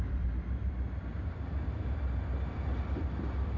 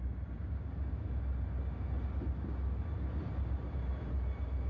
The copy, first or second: first